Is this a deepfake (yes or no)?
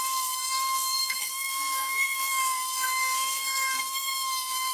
yes